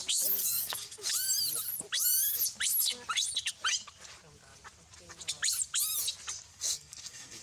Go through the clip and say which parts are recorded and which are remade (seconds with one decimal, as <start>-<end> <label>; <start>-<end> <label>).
0.0-0.4 recorded; 0.4-1.1 remade; 1.1-6.5 recorded; 6.5-7.4 remade